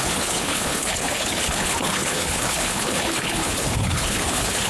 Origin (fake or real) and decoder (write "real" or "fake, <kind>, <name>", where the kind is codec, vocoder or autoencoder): fake, codec, HILCodec